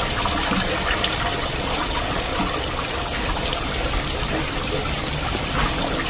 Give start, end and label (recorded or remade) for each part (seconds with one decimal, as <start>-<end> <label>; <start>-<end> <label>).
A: 0.0-1.4 recorded; 1.4-2.3 remade; 2.3-6.1 recorded